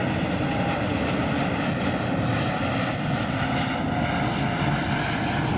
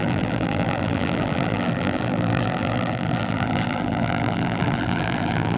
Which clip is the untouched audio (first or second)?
first